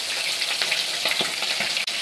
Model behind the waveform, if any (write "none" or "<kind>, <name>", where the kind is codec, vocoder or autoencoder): none